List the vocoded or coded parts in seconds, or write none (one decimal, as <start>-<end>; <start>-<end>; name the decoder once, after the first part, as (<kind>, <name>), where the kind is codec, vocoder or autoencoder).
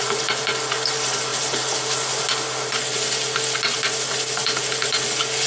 none